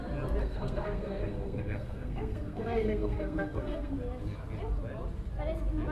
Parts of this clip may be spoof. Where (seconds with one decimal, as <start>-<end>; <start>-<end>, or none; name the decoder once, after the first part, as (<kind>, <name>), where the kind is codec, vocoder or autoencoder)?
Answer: 0.4-3.9 (codec, SNAC)